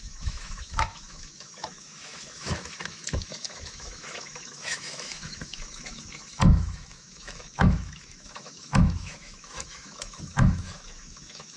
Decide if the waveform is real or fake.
fake